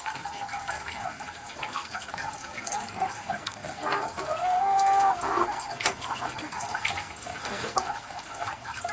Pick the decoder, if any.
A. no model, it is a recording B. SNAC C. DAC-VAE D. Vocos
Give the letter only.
B